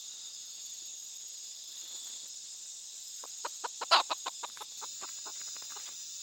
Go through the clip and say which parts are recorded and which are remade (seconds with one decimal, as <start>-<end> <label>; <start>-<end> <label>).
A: 0.0-6.2 recorded